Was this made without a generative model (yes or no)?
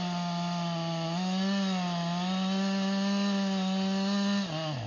yes